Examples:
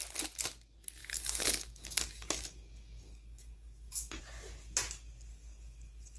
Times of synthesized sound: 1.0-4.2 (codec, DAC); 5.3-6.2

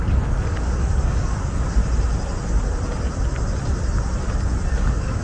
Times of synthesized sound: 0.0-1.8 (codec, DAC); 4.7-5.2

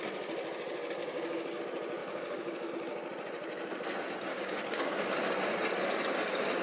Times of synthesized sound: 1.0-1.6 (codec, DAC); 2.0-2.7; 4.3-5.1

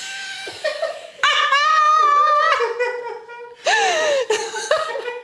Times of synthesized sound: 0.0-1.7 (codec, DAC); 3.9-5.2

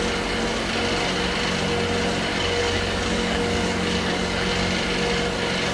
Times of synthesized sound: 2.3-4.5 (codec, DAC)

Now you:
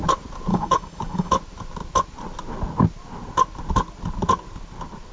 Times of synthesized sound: 0.5-1.3 (codec, DAC)